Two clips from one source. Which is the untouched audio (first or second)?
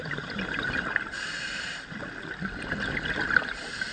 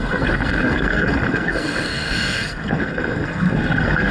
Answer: first